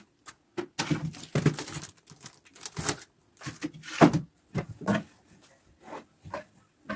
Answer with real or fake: real